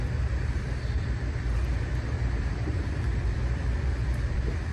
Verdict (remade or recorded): remade